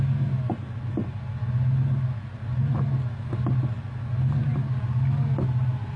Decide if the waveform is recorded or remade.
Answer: recorded